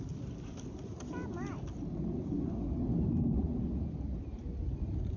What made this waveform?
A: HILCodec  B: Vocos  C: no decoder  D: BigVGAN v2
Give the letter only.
C